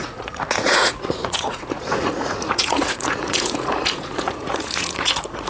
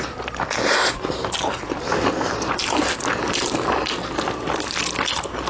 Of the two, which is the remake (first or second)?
first